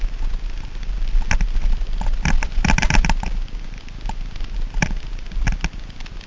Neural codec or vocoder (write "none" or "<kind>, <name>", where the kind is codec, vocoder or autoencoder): none